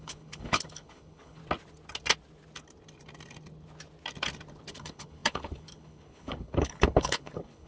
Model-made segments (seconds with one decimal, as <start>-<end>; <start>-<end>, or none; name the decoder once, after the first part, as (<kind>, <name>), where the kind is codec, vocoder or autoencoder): 0.0-1.4 (codec, HILCodec); 4.7-7.7